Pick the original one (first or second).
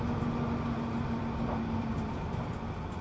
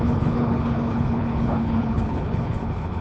first